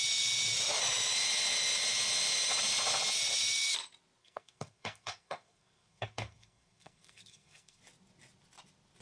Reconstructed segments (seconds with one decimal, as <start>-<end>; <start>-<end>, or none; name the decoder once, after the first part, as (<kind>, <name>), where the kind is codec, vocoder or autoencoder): 4.2-7.8 (codec, SNAC)